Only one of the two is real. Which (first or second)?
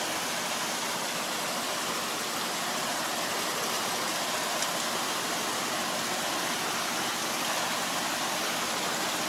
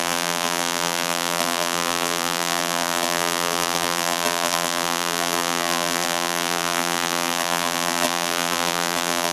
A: first